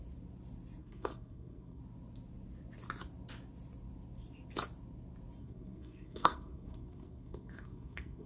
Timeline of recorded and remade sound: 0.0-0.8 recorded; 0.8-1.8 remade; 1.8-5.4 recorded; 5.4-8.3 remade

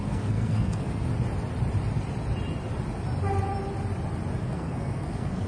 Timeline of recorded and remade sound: 0.0-1.1 remade; 1.1-4.4 recorded; 4.4-5.5 remade

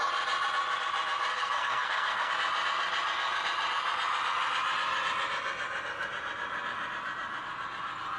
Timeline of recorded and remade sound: 0.0-1.3 recorded; 1.3-2.3 remade; 2.3-8.2 recorded

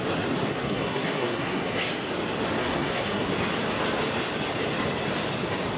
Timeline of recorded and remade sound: 0.0-0.5 recorded; 0.5-1.9 remade; 1.9-2.6 recorded; 2.6-3.3 remade; 3.3-5.8 recorded

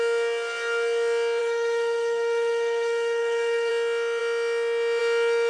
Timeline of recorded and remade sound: 0.0-1.4 recorded; 1.4-3.7 remade; 3.7-5.5 recorded

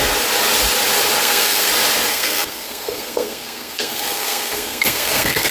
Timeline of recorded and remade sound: 0.0-1.2 recorded; 1.2-1.7 remade; 1.7-2.1 recorded; 2.1-5.5 remade

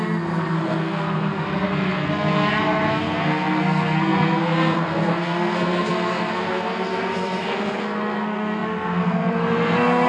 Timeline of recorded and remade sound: 0.0-10.1 remade